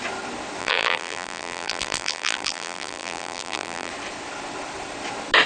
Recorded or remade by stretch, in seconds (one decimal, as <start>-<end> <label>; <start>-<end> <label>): 0.0-0.6 recorded; 0.6-3.9 remade; 3.9-5.5 recorded